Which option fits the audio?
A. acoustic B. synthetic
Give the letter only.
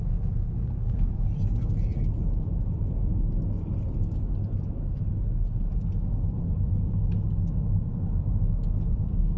A